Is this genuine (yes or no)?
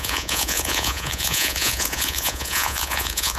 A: no